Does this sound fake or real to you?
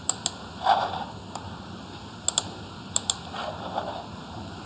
real